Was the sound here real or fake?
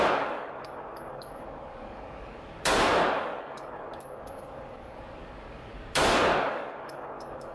fake